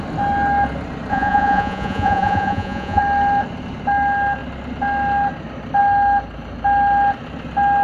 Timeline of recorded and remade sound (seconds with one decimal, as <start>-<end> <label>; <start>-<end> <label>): 0.0-1.1 recorded; 1.1-3.0 remade; 3.0-7.8 recorded